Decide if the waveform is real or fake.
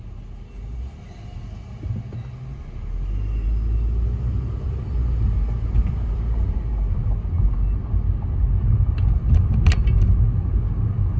real